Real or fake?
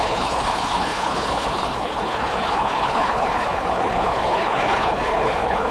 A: fake